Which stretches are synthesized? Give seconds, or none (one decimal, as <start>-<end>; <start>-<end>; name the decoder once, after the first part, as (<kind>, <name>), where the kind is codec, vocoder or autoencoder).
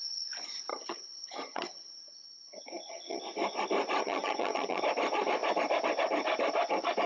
0.7-3.2 (vocoder, HiFi-GAN); 4.0-4.8